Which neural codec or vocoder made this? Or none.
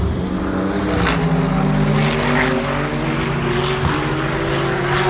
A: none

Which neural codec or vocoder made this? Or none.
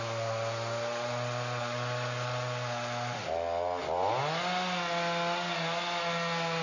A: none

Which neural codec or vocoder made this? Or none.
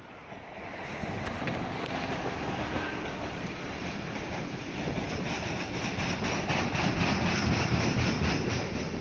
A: none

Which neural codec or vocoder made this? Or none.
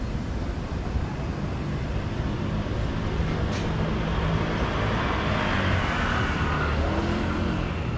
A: none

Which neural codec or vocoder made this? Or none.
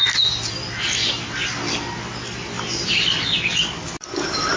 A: none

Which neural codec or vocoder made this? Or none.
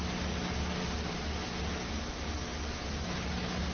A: none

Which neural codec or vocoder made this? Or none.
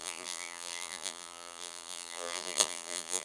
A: vocoder, BigVGAN v2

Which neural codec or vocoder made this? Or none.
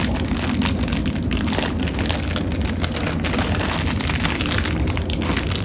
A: none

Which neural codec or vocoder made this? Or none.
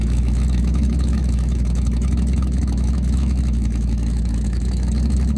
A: autoencoder, DAC-VAE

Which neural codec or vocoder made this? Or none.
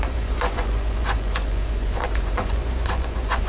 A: vocoder, Vocos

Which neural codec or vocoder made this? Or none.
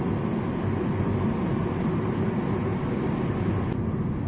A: none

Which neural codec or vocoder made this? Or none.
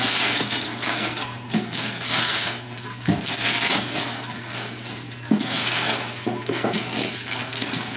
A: codec, SNAC